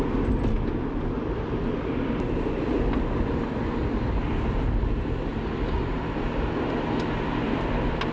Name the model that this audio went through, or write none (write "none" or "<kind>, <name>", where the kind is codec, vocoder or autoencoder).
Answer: none